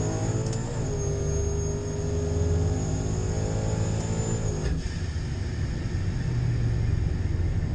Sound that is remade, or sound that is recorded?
recorded